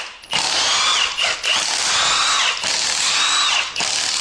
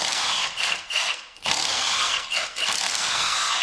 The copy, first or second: second